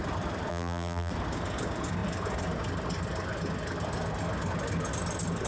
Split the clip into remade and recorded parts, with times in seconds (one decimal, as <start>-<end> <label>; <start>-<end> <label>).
0.0-0.5 recorded; 0.5-1.1 remade; 1.1-5.5 recorded